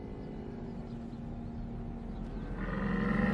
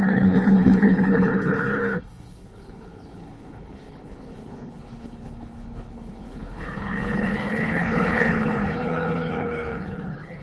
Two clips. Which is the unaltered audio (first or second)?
first